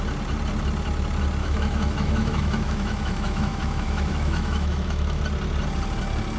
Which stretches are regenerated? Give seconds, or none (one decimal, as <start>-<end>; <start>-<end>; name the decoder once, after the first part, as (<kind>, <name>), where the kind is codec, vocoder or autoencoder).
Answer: 1.4-5.2 (autoencoder, DAC-VAE)